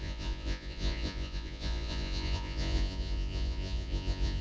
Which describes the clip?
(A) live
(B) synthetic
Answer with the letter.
B